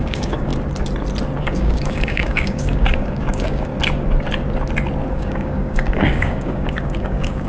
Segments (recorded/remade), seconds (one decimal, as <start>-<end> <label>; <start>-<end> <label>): 0.0-0.5 remade; 0.5-1.4 recorded; 1.4-3.7 remade; 3.7-5.1 recorded; 5.1-7.5 remade